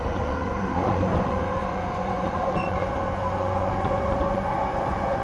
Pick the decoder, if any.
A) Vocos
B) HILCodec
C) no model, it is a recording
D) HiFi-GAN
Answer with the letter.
A